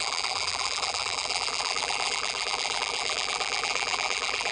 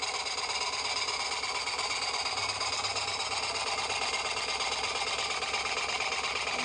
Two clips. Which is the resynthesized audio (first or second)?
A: first